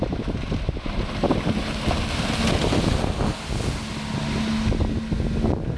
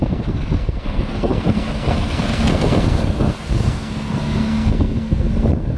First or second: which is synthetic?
second